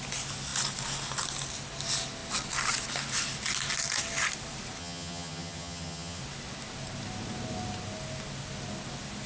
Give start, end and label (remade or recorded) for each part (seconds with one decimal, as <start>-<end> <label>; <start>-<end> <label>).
0.0-4.8 recorded; 4.8-6.2 remade; 6.2-9.3 recorded